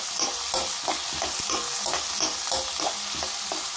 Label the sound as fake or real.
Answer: real